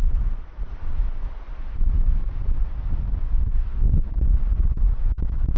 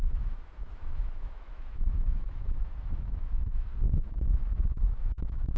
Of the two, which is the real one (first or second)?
first